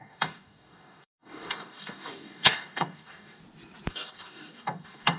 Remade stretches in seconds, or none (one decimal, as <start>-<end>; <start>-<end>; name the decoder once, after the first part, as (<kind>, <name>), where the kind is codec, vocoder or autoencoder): 0.0-3.4 (codec, DAC); 3.9-5.2